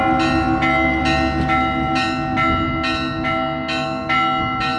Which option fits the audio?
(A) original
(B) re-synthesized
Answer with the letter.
A